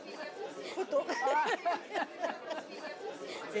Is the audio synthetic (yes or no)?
no